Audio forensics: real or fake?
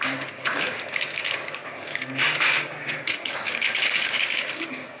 fake